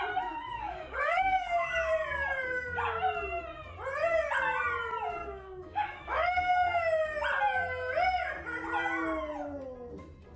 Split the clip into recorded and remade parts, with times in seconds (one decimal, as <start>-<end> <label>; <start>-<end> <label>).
0.0-0.6 recorded; 0.6-1.9 remade; 1.9-5.2 recorded; 5.2-6.8 remade; 6.8-10.4 recorded